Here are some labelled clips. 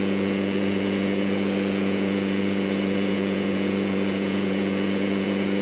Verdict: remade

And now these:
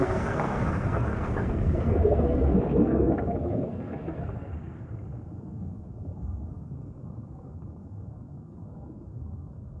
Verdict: remade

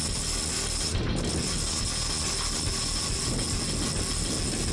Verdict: recorded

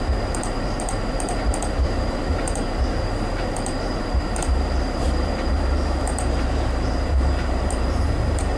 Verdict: remade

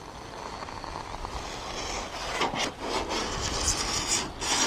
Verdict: recorded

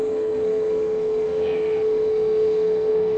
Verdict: remade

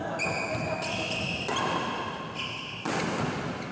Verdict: recorded